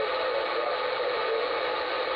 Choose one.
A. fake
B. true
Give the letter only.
B